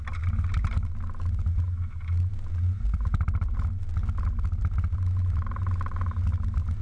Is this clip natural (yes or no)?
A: yes